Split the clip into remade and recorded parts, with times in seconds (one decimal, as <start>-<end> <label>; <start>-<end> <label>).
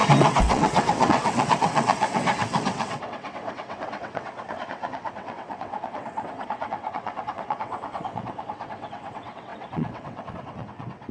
0.0-11.1 remade